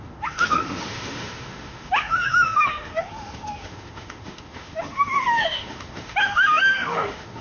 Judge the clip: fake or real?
fake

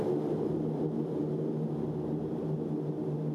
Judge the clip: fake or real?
real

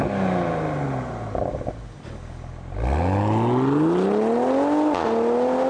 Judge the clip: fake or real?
real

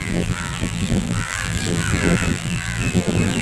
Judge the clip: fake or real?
fake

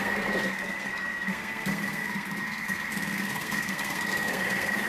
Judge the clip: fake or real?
fake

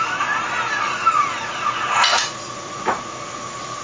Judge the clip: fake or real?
fake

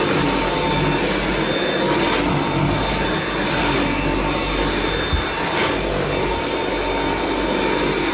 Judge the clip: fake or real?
real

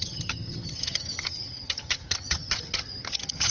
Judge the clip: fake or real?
fake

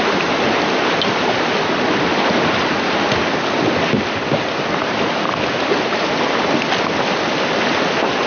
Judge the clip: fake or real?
real